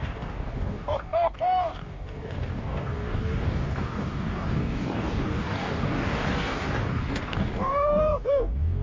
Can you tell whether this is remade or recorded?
remade